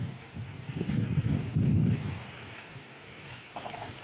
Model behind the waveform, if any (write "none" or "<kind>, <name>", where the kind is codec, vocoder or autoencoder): codec, DAC